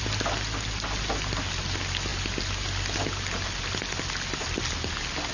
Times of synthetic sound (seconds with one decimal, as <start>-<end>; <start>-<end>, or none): none

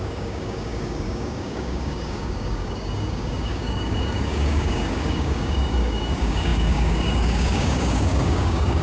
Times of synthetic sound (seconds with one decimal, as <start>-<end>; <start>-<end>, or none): 0.0-8.8

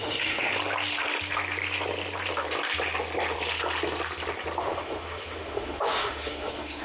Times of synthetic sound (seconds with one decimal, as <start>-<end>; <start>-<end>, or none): 0.0-0.5; 4.6-6.8

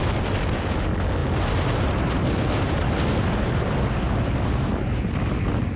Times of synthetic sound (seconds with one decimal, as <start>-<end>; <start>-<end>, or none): none

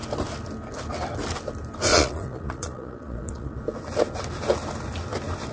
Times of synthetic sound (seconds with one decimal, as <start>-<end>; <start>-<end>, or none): 1.9-3.6

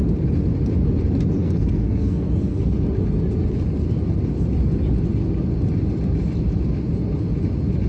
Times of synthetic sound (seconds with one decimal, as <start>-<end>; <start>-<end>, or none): 1.4-2.6

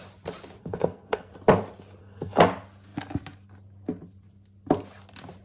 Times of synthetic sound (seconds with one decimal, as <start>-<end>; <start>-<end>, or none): 0.6-1.3; 2.0-2.5

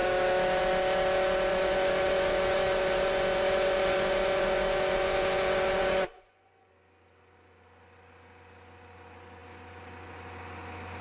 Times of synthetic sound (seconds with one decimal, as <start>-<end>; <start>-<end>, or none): 1.5-6.7